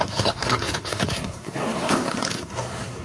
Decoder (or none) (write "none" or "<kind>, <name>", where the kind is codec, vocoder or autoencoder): codec, SNAC